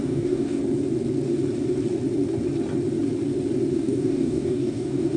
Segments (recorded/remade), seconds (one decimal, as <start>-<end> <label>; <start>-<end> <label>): 0.0-0.6 remade; 0.6-3.7 recorded; 3.7-5.2 remade